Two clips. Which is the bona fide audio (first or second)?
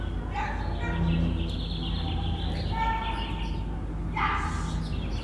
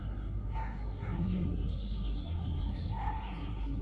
first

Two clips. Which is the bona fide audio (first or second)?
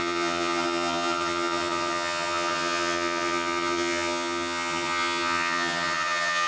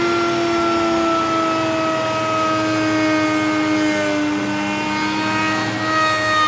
second